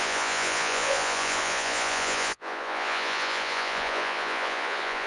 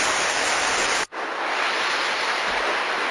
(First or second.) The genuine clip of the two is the second